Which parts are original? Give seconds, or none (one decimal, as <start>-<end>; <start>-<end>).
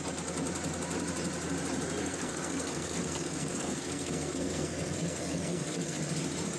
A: 0.0-2.0; 6.0-6.6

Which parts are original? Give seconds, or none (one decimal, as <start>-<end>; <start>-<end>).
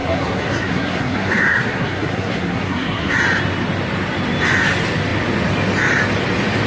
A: 3.2-6.7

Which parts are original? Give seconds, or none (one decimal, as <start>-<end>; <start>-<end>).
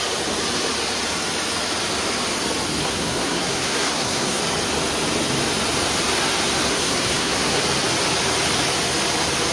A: 0.0-2.8; 4.4-6.7; 7.6-9.5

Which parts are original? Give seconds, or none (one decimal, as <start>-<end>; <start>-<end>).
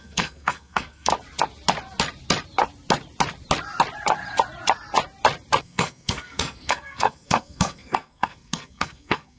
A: 1.1-5.6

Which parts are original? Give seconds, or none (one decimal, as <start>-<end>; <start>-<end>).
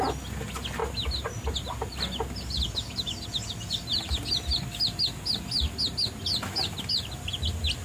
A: 0.0-7.8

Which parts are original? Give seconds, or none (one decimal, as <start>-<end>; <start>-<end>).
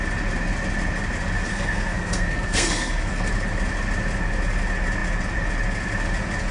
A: 0.0-1.5; 3.3-6.5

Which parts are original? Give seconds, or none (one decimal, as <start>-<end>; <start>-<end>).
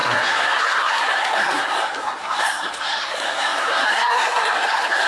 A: none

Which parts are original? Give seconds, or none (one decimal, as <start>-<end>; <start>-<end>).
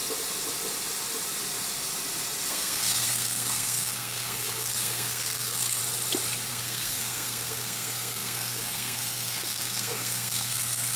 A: 0.0-2.5; 5.8-6.5